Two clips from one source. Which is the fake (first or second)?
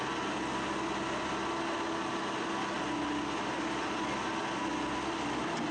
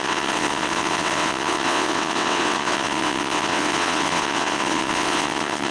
second